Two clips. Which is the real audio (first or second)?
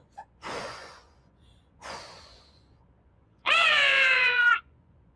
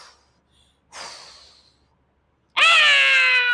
second